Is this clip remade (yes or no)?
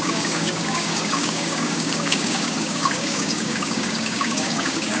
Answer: yes